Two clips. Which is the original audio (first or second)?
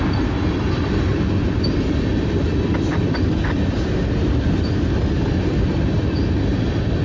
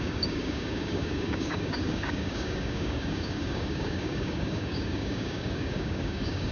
first